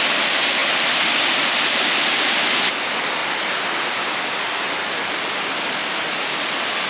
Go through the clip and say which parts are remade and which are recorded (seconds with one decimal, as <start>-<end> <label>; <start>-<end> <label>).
0.0-6.9 recorded